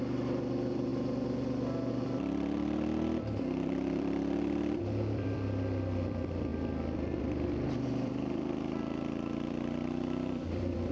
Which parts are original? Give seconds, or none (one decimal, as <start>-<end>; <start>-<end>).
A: 0.9-1.9; 6.5-7.2